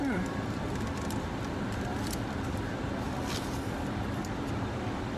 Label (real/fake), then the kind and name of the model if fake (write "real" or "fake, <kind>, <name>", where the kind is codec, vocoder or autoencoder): fake, vocoder, BigVGAN v2